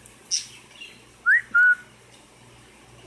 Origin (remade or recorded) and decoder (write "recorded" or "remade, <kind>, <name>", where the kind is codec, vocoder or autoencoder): recorded